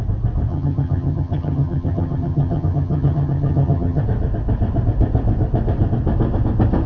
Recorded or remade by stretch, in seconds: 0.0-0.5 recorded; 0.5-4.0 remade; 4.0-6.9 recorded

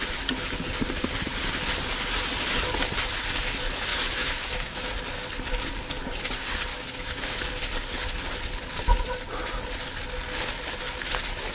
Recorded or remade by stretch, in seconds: 0.0-3.9 recorded; 3.9-4.9 remade; 4.9-6.7 recorded; 6.7-7.4 remade; 7.4-11.5 recorded

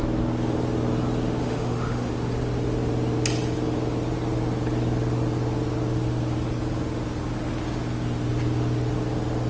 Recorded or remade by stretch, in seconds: 0.0-1.4 recorded; 1.4-2.1 remade; 2.1-9.5 recorded

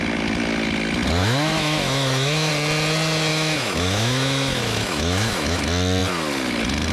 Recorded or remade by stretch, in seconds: 0.0-1.2 recorded; 1.2-2.5 remade; 2.5-3.3 recorded; 3.3-5.6 remade; 5.6-6.9 recorded